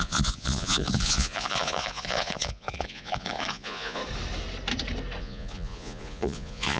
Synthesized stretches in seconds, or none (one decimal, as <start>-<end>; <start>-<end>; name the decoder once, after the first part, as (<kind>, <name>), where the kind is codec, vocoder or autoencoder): 0.0-4.0 (vocoder, Vocos); 5.2-6.8